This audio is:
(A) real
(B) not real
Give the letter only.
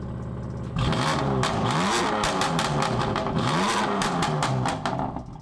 A